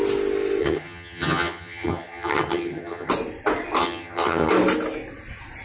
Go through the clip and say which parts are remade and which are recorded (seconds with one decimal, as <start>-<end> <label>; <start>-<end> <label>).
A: 0.0-0.6 recorded; 0.6-3.1 remade; 3.1-3.8 recorded; 3.8-4.5 remade; 4.5-5.6 recorded